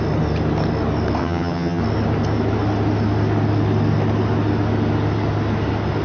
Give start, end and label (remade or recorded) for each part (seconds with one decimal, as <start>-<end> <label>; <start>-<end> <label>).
0.0-1.2 recorded; 1.2-1.8 remade; 1.8-6.0 recorded